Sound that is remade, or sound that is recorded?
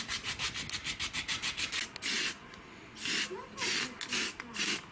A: recorded